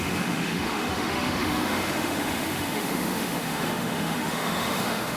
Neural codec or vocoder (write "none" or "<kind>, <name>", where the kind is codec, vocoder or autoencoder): autoencoder, DAC-VAE